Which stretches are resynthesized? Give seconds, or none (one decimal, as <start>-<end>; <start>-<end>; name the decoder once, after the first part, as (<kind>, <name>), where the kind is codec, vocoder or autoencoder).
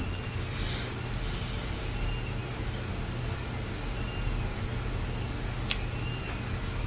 none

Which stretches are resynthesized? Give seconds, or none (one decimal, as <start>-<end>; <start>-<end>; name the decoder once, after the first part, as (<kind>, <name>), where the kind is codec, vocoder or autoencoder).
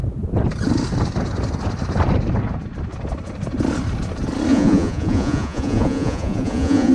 4.5-6.9 (vocoder, Vocos)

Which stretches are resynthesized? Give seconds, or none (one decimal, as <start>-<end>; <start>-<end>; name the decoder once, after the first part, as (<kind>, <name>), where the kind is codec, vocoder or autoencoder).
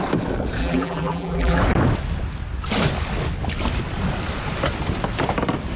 0.6-1.6 (vocoder, BigVGAN v2)